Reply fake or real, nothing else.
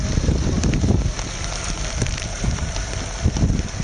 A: fake